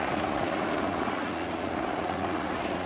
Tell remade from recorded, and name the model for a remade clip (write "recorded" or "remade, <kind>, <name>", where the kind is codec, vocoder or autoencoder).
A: remade, vocoder, Vocos